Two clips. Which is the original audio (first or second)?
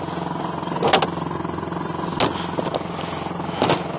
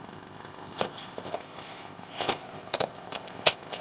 first